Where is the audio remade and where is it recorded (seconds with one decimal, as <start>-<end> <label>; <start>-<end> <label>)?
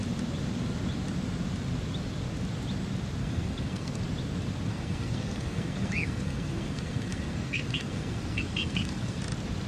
0.0-3.2 recorded; 3.2-4.0 remade; 4.0-4.7 recorded; 4.7-9.2 remade; 9.2-9.7 recorded